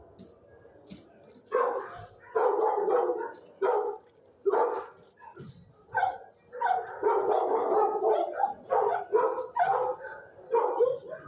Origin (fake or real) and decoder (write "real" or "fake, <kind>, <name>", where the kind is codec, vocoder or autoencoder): real